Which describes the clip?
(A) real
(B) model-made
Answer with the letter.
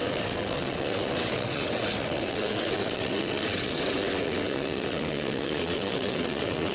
B